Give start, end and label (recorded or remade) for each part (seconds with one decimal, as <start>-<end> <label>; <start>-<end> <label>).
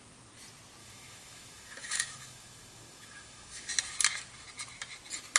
0.0-0.8 recorded; 0.8-3.7 remade; 3.7-5.4 recorded